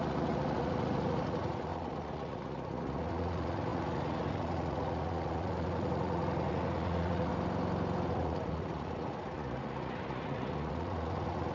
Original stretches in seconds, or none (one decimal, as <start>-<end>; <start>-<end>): 7.3-8.1